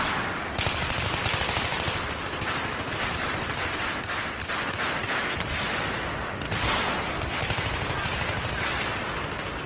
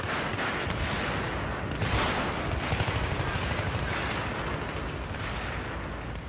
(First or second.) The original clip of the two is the second